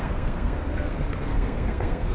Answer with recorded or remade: remade